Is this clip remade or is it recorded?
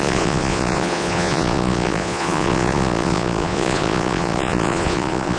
remade